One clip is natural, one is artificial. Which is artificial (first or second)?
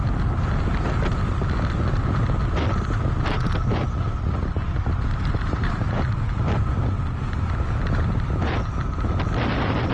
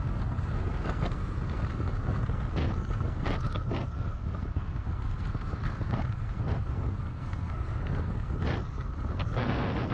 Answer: second